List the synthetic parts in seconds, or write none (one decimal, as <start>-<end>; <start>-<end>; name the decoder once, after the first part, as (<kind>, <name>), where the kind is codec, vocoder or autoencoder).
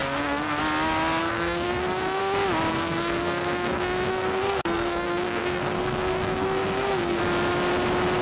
0.0-0.6 (codec, SNAC); 1.2-2.2; 2.7-7.2